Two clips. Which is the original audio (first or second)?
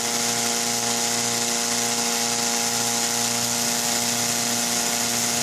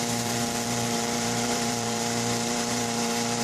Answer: first